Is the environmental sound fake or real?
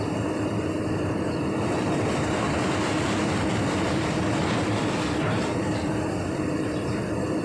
fake